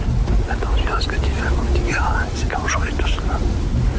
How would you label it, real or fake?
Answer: real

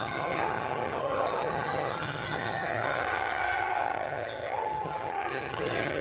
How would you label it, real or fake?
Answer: fake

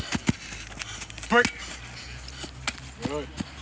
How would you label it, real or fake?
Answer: real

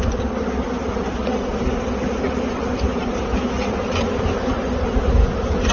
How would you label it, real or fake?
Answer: real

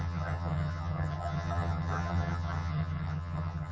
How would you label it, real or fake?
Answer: fake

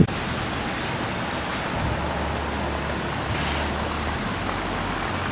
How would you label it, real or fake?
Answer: real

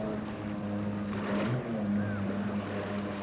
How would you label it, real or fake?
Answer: real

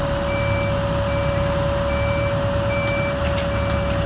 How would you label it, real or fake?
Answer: real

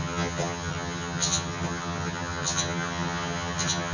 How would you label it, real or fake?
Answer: fake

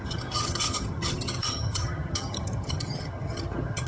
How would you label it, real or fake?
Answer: fake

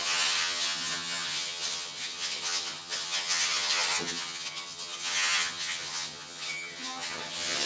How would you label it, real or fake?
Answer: fake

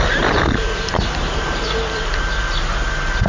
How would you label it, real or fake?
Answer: real